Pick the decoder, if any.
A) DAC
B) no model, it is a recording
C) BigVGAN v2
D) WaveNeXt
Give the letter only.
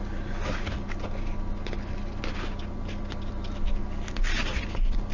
B